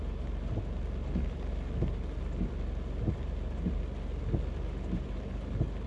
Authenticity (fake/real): real